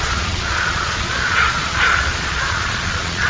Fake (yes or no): yes